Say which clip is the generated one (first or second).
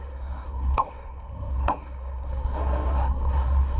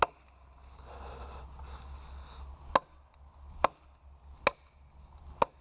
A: first